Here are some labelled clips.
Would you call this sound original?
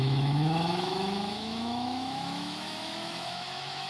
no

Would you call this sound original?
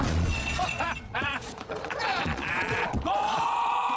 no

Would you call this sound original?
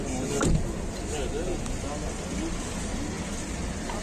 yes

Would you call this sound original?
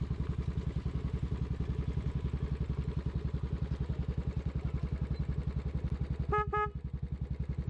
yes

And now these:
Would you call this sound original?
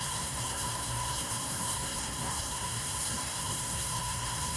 no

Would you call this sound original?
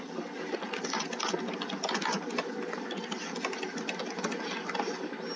yes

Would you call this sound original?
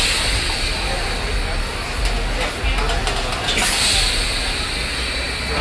yes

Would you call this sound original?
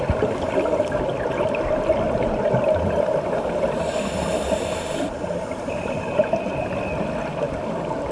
yes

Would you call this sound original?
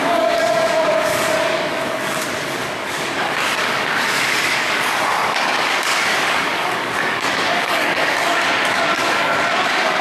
no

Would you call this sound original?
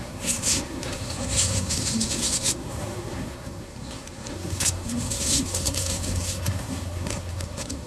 no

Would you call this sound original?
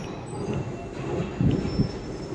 yes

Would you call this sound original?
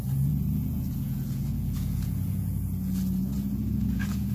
no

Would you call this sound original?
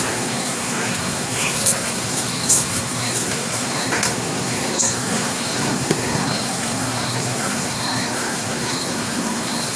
no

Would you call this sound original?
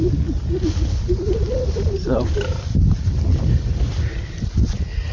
yes